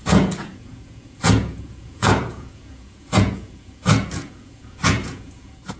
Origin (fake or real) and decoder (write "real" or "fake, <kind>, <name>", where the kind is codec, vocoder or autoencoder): fake, vocoder, Vocos